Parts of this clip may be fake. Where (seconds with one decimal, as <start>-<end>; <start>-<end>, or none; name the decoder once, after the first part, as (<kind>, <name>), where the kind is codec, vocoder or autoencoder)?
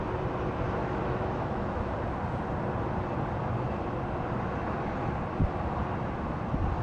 0.8-1.8 (autoencoder, DAC-VAE)